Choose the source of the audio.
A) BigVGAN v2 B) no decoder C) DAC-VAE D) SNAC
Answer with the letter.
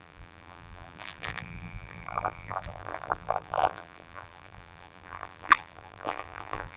A